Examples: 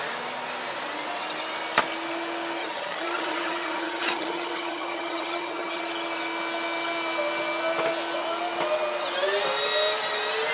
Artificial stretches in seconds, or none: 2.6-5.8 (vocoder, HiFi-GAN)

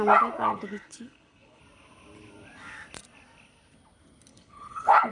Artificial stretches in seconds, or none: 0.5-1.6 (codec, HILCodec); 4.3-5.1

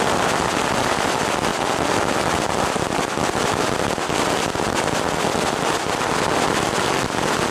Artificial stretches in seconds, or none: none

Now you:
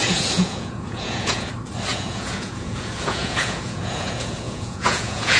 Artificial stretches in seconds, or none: 0.0-1.5 (vocoder, Vocos); 1.9-5.4